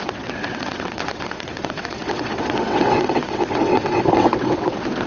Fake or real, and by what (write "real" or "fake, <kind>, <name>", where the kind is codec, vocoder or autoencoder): fake, vocoder, WaveNeXt